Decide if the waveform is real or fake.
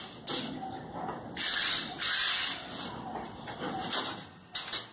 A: real